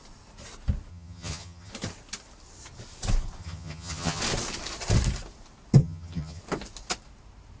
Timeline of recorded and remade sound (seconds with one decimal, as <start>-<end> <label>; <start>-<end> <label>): 0.0-0.9 recorded; 0.9-1.7 remade; 1.7-3.4 recorded; 3.4-4.2 remade; 4.2-5.8 recorded; 5.8-6.4 remade; 6.4-7.6 recorded